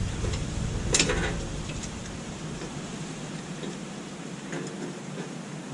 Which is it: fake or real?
fake